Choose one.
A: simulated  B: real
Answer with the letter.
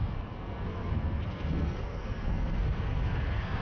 A